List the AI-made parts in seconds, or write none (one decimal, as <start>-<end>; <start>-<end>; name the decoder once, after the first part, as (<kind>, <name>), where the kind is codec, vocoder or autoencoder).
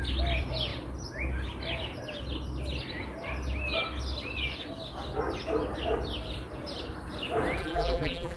7.6-8.4 (vocoder, BigVGAN v2)